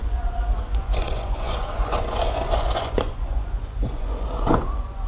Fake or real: fake